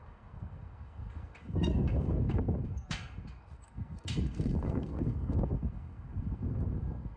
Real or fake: fake